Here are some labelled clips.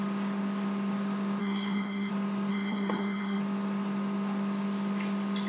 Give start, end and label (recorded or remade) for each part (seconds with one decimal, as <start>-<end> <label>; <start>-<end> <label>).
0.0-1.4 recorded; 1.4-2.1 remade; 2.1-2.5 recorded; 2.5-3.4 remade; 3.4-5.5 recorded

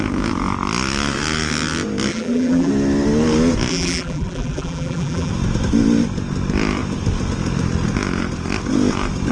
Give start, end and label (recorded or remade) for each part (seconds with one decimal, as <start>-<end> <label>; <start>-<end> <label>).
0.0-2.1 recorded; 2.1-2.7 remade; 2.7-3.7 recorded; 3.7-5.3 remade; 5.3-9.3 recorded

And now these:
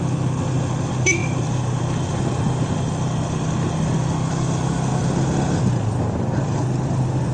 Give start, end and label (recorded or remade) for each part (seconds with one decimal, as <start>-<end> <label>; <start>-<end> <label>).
0.0-1.2 recorded; 1.2-1.8 remade; 1.8-7.3 recorded

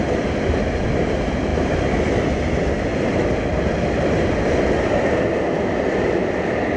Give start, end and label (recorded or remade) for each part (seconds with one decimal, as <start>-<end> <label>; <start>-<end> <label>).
0.0-6.8 recorded

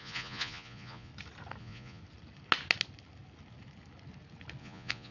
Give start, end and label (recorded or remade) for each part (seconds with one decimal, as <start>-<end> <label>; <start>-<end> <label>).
0.0-1.1 remade; 1.1-1.6 recorded; 1.6-2.0 remade; 2.0-4.6 recorded; 4.6-5.1 remade

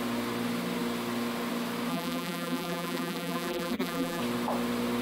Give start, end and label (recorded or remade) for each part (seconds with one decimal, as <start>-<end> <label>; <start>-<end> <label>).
0.0-1.9 recorded; 1.9-4.2 remade; 4.2-5.0 recorded

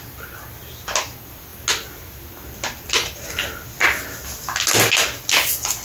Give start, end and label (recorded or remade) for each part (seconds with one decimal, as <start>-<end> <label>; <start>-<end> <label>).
0.0-5.8 recorded